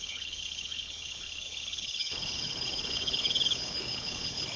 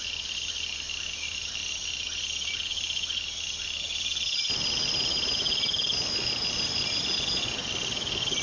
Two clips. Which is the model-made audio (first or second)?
first